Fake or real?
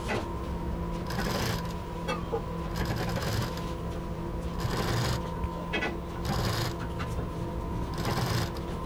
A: real